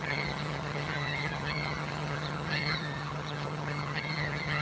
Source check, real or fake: fake